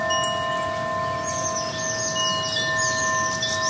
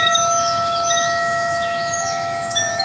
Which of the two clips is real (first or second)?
first